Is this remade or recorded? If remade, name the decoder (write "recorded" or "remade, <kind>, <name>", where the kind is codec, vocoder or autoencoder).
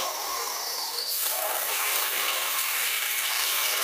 remade, codec, DAC